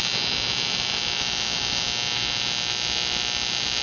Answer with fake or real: real